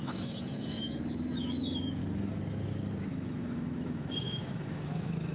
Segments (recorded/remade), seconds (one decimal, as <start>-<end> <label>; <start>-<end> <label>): 0.0-2.0 remade; 2.0-3.1 recorded; 3.1-5.3 remade